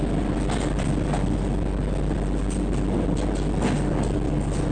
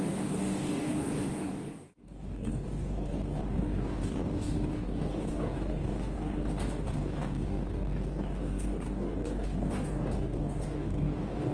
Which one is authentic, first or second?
first